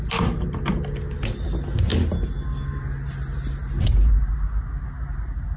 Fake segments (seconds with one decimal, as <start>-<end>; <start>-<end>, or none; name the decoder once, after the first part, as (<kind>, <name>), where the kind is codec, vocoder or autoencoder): none